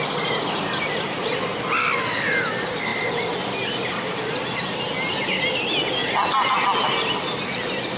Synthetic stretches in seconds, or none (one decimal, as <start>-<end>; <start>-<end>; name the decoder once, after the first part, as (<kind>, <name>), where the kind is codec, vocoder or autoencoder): none